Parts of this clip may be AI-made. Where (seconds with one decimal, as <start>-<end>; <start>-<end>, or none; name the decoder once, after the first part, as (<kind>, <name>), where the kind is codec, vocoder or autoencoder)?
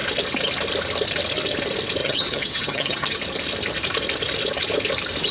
2.0-3.2 (vocoder, HiFi-GAN)